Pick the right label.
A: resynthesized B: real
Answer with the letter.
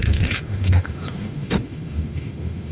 A